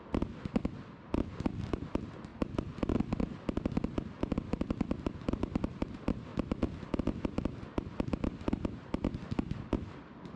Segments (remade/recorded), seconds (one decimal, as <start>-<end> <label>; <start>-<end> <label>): 0.0-10.4 recorded